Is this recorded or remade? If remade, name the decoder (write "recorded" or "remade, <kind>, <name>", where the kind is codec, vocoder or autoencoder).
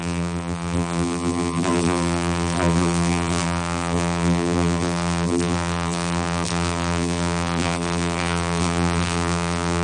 remade, vocoder, BigVGAN v2